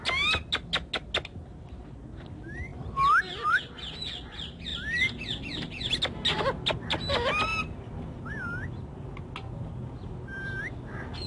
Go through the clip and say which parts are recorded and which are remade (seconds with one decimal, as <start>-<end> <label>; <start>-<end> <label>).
0.0-11.3 recorded